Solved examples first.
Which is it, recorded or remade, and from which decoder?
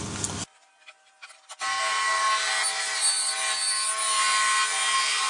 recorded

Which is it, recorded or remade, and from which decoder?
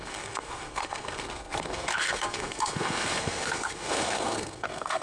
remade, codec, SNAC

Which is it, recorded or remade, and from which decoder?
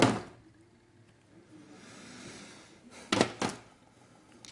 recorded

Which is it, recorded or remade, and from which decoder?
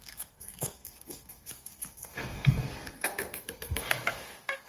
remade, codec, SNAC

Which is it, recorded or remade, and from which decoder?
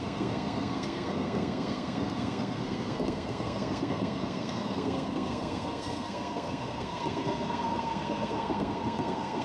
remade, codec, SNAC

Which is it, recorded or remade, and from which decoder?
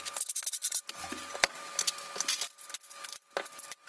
recorded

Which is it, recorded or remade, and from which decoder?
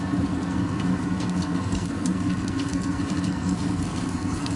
remade, codec, SNAC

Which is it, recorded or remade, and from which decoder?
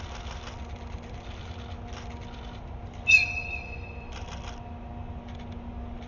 recorded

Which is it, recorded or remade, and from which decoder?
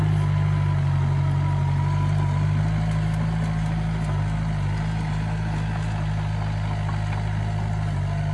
recorded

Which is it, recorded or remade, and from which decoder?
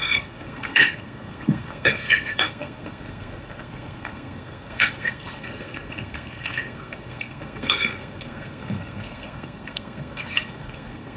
remade, codec, SNAC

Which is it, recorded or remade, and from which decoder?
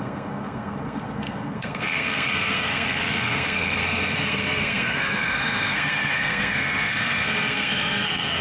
remade, codec, SNAC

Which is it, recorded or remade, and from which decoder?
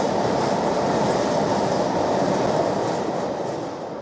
recorded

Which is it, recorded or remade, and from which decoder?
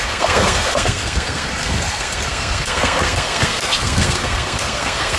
remade, codec, SNAC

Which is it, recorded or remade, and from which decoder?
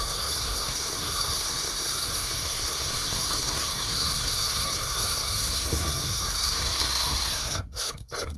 remade, codec, SNAC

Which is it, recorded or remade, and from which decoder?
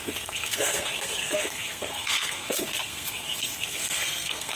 remade, codec, SNAC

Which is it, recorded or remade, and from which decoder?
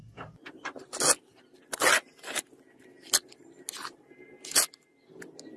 recorded